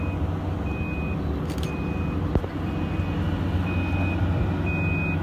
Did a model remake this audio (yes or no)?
no